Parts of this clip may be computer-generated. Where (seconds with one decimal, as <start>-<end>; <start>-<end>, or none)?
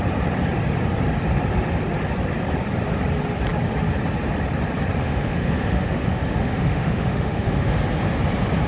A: 5.0-7.7